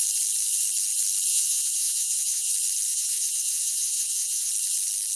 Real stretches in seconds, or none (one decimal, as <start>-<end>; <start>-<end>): 0.0-1.3; 2.5-2.9; 4.5-5.2